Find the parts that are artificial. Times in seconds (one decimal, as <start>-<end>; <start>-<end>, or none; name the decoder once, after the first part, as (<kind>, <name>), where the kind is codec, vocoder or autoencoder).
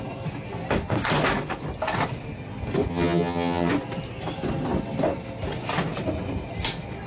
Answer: 2.9-3.7 (vocoder, HiFi-GAN)